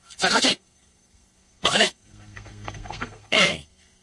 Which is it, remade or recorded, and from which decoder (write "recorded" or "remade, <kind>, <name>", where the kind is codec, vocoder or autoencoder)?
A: remade, codec, SNAC